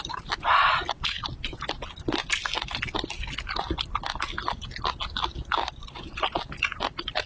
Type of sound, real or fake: real